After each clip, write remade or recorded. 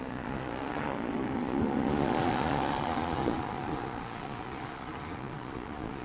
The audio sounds remade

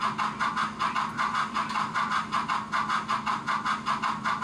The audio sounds recorded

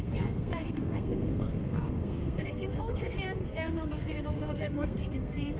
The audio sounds remade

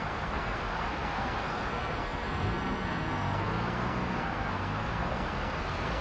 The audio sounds remade